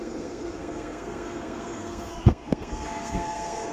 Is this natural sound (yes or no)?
no